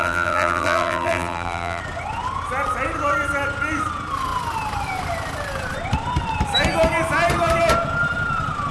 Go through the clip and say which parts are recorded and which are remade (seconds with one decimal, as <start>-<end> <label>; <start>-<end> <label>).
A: 0.0-1.8 remade; 1.8-8.7 recorded